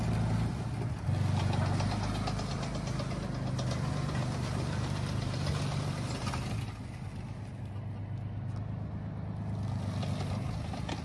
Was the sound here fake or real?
real